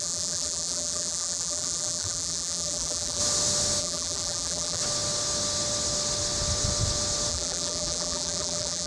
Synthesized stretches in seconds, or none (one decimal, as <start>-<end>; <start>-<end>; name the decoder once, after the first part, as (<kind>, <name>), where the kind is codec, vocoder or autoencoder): 0.0-3.2 (vocoder, BigVGAN v2); 3.8-4.8; 7.3-8.9